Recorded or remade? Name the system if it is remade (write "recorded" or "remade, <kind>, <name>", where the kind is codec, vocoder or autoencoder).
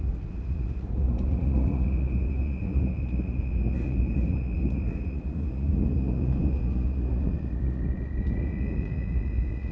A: remade, vocoder, Vocos